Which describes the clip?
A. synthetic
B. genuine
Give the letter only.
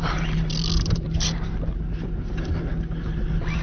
B